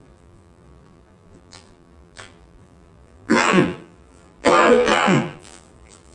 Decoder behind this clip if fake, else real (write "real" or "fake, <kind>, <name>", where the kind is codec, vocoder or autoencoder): fake, vocoder, BigVGAN v2